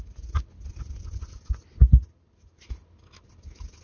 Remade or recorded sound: recorded